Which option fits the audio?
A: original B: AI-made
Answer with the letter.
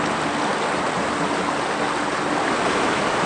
A